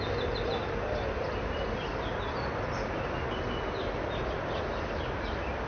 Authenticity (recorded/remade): recorded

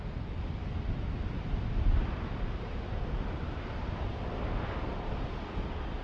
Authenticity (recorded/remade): recorded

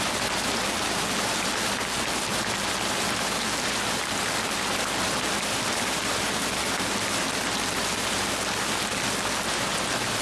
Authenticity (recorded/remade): remade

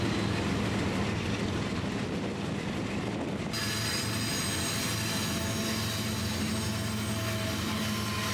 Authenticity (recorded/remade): recorded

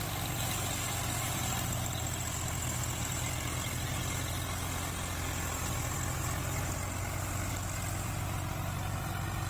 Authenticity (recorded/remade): remade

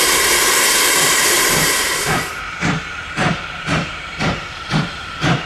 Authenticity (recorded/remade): remade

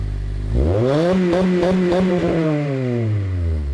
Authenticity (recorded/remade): remade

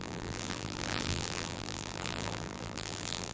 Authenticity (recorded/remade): remade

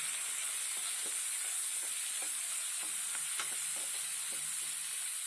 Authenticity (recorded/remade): recorded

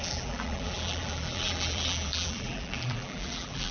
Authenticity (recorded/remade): remade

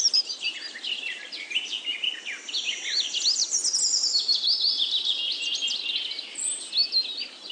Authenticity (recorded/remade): recorded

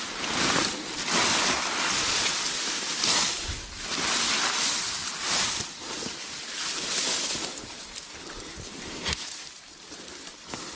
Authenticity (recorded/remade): recorded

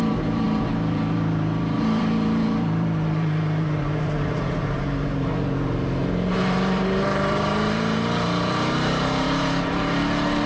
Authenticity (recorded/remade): remade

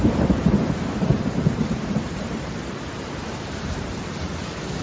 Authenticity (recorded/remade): remade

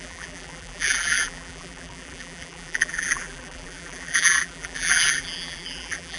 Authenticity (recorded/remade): remade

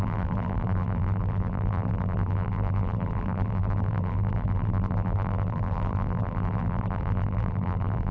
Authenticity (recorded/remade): remade